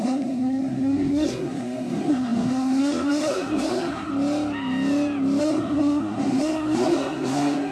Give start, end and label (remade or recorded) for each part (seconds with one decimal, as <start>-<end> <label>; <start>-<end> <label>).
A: 0.0-4.1 remade; 4.1-5.4 recorded; 5.4-7.7 remade